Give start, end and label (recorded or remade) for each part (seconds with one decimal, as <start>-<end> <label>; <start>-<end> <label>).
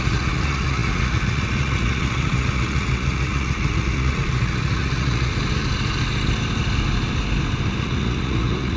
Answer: 0.0-5.3 remade; 5.3-7.8 recorded; 7.8-8.8 remade